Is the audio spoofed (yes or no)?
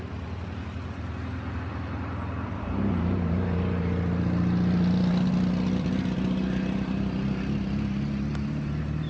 no